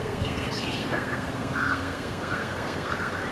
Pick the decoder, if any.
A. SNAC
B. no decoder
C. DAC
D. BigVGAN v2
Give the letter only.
A